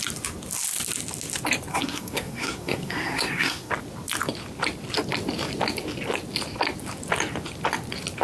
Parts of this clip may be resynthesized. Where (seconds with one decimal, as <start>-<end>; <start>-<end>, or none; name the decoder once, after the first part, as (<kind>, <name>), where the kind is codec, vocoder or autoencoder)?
1.7-3.7 (codec, SNAC)